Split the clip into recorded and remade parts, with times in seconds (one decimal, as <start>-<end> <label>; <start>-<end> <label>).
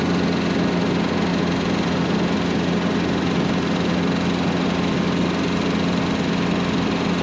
0.0-7.2 recorded